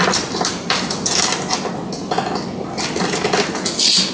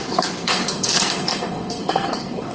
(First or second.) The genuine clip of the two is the first